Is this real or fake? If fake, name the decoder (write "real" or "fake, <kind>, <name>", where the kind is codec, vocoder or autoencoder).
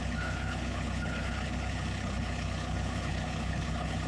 fake, codec, HILCodec